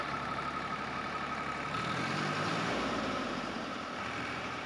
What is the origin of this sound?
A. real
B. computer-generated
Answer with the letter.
B